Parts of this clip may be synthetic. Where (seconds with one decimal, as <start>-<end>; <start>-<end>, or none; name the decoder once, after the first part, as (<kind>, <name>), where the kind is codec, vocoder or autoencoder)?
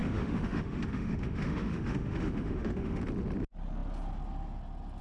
0.0-3.0 (autoencoder, DAC-VAE)